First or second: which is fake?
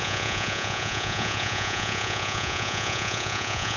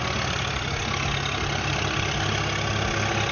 first